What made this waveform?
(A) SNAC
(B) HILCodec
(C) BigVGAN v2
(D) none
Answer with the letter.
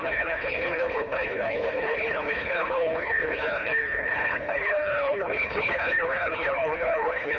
B